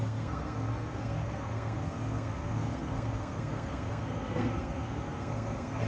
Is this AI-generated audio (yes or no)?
yes